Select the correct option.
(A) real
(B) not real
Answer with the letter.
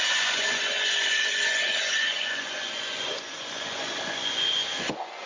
B